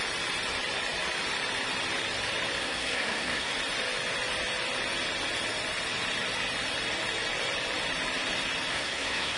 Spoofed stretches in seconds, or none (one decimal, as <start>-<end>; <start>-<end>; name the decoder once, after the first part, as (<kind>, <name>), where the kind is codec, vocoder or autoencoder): 2.6-3.5 (codec, SNAC); 8.7-9.4